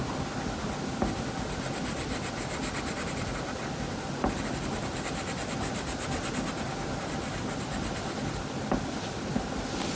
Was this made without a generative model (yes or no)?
yes